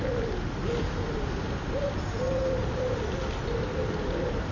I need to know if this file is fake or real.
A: real